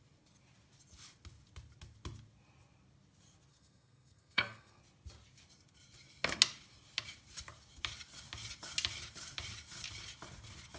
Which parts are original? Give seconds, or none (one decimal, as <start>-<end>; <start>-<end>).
0.0-3.5; 4.8-10.8

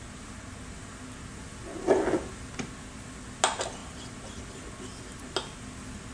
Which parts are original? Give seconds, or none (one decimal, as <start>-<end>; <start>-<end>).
0.0-6.1

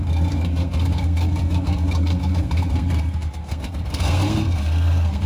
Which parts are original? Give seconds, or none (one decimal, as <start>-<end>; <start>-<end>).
none

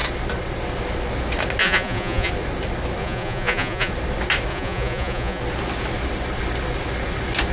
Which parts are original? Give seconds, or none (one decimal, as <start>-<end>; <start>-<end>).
0.0-1.6; 2.3-3.0; 3.9-4.5; 5.4-7.5

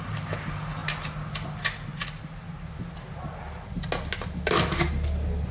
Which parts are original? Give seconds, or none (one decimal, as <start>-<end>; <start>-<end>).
0.0-5.5

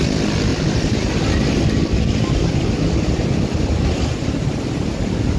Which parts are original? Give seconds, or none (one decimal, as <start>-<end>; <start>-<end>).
0.0-5.4

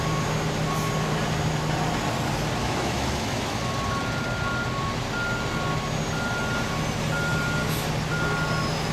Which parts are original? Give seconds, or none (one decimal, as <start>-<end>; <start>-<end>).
0.0-2.6; 3.7-8.9

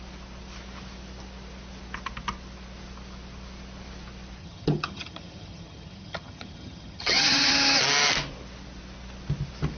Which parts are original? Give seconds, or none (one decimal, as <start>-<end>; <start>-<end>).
0.0-4.4; 7.5-9.8